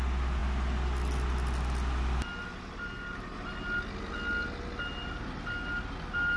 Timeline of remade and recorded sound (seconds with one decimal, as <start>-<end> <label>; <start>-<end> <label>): 0.0-6.4 recorded